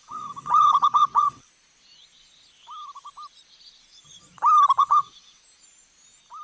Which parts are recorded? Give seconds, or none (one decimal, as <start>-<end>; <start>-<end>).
1.5-4.8; 5.4-6.4